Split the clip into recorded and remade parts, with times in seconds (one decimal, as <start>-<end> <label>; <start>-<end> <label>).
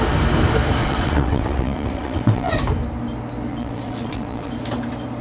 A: 0.0-0.8 recorded; 0.8-2.5 remade; 2.5-3.5 recorded; 3.5-4.5 remade; 4.5-5.2 recorded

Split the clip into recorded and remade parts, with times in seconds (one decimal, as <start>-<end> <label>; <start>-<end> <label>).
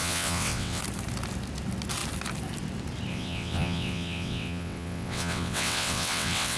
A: 0.0-0.8 remade; 0.8-3.1 recorded; 3.1-6.6 remade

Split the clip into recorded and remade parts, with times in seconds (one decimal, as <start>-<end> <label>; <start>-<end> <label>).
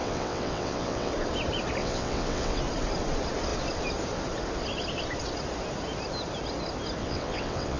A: 0.0-1.1 remade; 1.1-1.8 recorded; 1.8-2.6 remade; 2.6-7.0 recorded; 7.0-7.8 remade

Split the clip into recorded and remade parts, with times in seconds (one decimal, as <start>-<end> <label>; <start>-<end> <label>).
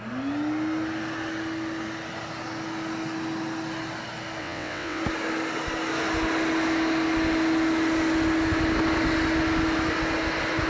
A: 0.0-4.4 recorded; 4.4-5.0 remade; 5.0-10.7 recorded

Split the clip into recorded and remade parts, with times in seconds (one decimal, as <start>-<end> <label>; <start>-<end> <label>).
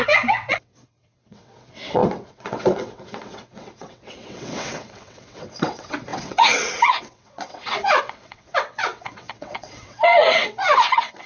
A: 0.0-11.3 remade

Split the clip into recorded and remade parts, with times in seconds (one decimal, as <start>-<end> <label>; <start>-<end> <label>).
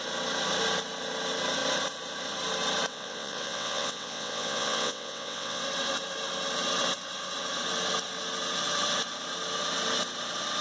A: 0.0-2.9 recorded; 2.9-5.6 remade; 5.6-10.6 recorded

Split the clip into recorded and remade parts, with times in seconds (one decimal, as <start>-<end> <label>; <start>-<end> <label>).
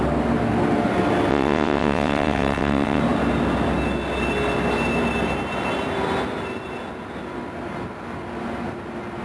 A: 0.0-1.3 recorded; 1.3-3.0 remade; 3.0-9.2 recorded